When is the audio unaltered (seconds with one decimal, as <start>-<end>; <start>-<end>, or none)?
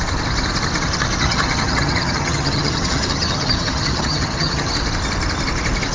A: 0.0-1.2; 4.7-5.9